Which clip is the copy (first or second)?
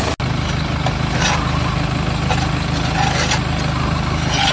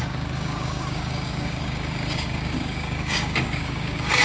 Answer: second